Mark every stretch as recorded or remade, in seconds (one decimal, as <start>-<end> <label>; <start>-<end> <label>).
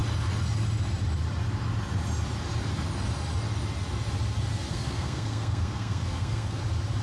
0.0-4.7 recorded; 4.7-6.6 remade; 6.6-7.0 recorded